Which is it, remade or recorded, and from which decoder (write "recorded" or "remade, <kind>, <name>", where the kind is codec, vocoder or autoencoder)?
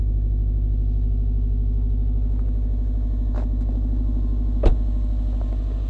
recorded